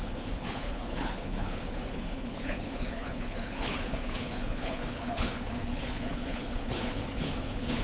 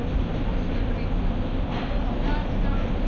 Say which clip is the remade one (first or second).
first